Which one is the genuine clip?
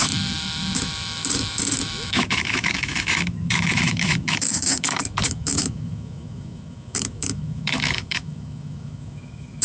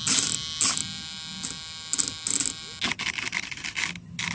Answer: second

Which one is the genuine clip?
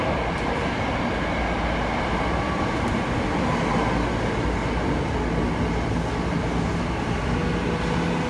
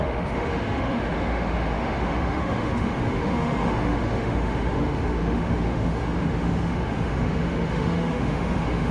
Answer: first